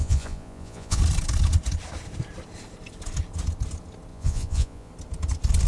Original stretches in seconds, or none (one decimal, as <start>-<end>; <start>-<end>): 1.0-4.1; 4.9-5.7